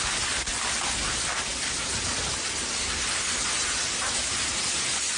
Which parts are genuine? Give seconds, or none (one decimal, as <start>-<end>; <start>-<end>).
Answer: 0.0-5.2